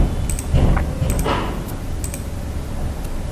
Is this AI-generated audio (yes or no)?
no